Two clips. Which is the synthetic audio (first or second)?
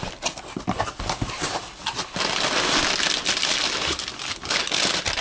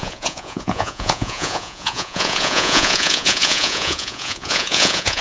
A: second